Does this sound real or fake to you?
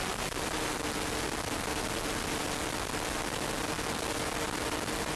real